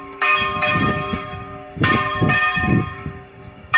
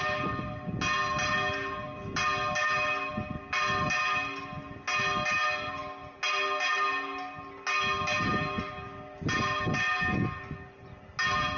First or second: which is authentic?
second